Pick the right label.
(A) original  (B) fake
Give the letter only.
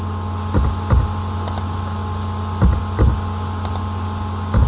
A